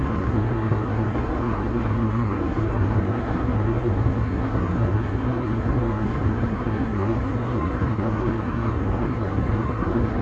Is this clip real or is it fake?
fake